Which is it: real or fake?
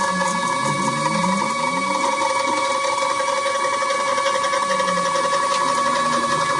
real